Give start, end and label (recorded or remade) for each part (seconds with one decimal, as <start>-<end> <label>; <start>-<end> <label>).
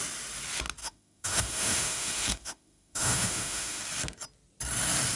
0.0-0.8 recorded; 0.8-3.8 remade; 3.8-5.2 recorded